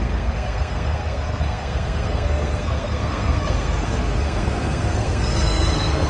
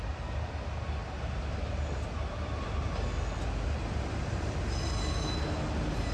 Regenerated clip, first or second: first